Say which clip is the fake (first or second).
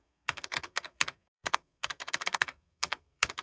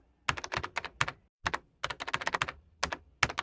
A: first